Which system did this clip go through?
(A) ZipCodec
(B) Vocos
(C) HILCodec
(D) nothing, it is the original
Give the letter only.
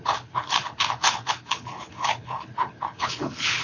C